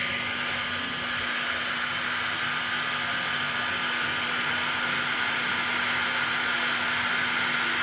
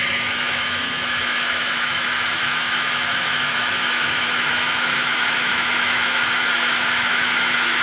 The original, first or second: first